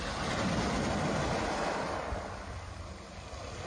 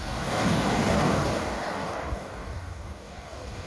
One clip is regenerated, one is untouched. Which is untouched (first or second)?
first